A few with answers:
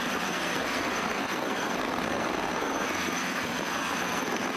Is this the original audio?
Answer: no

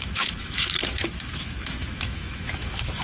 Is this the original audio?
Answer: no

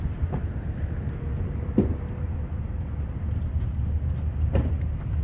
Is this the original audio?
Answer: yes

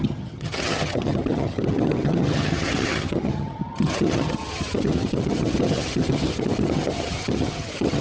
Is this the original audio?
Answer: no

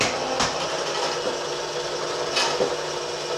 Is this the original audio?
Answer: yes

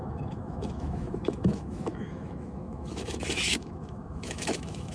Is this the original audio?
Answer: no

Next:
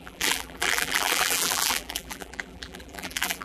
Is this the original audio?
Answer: no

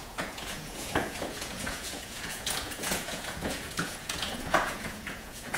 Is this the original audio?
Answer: no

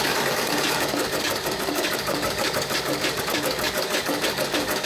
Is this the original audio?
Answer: no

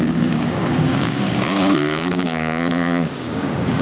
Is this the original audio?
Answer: no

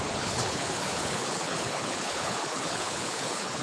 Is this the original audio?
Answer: no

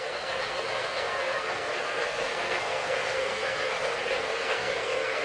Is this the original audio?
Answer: no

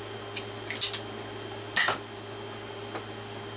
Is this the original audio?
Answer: yes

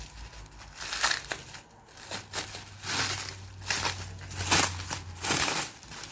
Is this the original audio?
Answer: yes